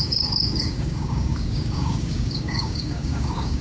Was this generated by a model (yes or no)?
yes